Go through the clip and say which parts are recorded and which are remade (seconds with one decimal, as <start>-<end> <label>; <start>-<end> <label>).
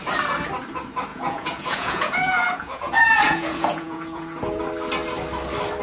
0.0-1.1 recorded; 1.1-4.6 remade; 4.6-5.8 recorded